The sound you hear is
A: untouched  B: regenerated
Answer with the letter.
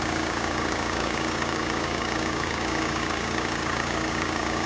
B